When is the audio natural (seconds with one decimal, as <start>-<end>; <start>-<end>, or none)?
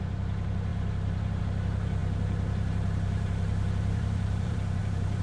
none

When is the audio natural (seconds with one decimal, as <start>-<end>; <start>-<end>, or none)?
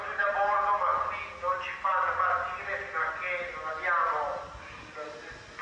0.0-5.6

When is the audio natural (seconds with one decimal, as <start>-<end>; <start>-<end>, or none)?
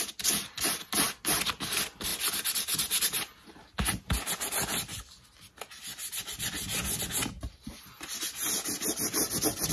0.0-9.7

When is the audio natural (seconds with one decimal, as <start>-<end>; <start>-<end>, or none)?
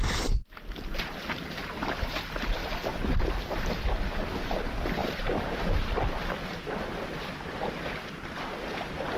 0.0-5.0; 5.9-9.2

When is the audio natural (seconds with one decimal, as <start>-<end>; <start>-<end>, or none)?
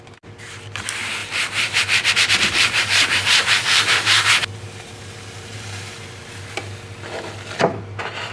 0.0-1.2; 6.2-8.3